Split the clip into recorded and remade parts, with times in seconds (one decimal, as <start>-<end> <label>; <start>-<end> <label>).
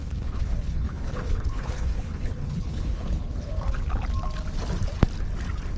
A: 0.0-3.5 remade; 3.5-5.8 recorded